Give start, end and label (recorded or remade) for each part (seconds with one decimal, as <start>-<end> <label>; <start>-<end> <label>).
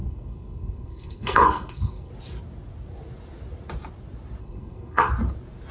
0.0-2.1 remade; 2.1-4.4 recorded; 4.4-5.1 remade; 5.1-5.7 recorded